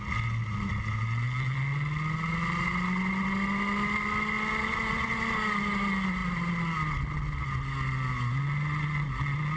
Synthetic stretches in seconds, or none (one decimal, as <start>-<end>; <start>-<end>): none